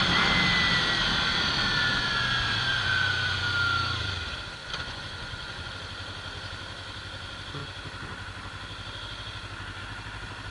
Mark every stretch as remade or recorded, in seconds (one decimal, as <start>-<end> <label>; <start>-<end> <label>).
0.0-1.9 recorded; 1.9-3.5 remade; 3.5-4.6 recorded; 4.6-5.7 remade; 5.7-10.5 recorded